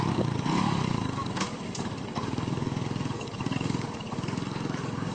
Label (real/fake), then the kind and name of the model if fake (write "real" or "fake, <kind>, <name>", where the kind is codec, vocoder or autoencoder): fake, codec, DAC